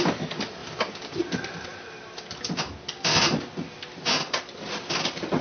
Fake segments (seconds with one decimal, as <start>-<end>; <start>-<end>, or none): 0.6-1.2